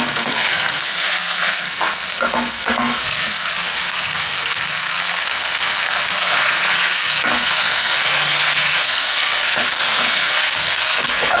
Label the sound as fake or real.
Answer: fake